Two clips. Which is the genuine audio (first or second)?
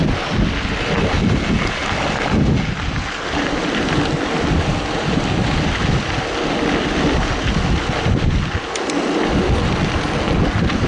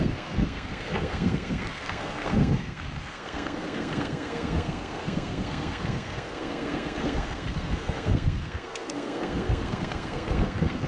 first